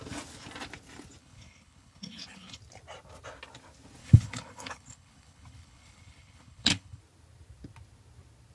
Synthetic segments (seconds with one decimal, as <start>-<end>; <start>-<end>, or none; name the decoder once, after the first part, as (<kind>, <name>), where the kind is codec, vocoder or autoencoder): 1.2-2.6 (codec, HILCodec); 4.0-7.0